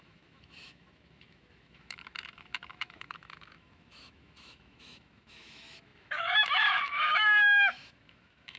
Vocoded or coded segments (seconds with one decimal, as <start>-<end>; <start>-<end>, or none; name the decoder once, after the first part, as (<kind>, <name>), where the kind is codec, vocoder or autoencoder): 0.0-8.6 (autoencoder, DAC-VAE)